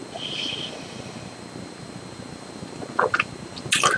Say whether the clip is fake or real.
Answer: real